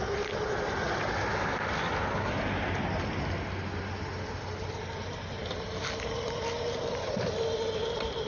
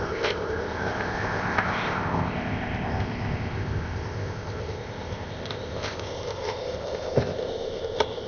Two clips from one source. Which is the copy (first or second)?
second